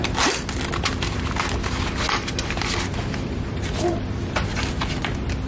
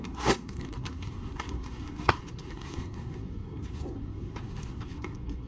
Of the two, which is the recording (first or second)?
first